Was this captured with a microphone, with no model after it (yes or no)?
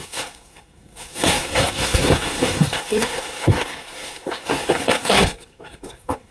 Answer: no